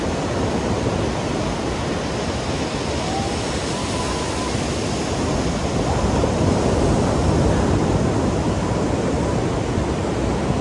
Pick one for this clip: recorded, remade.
recorded